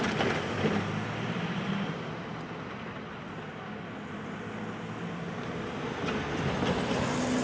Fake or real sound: real